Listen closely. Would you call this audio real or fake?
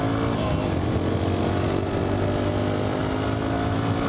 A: real